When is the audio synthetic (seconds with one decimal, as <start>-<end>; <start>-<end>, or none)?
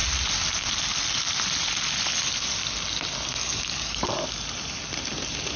none